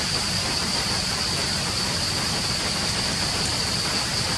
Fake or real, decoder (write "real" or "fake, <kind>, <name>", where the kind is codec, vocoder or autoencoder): fake, vocoder, BigVGAN v2